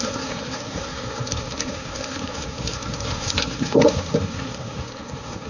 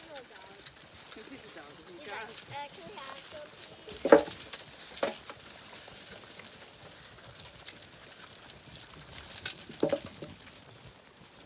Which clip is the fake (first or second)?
first